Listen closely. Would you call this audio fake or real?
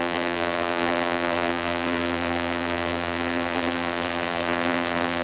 fake